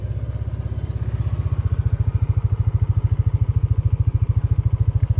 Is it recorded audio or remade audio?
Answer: recorded